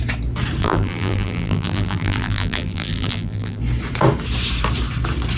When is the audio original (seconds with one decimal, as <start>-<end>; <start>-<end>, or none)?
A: 0.0-0.6; 3.6-5.4